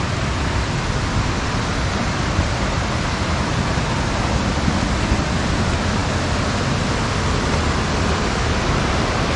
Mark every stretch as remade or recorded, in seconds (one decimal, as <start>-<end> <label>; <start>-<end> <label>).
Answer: 0.0-9.4 recorded